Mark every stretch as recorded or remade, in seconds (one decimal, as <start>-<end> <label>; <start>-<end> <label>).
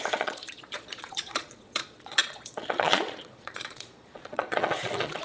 0.0-5.2 remade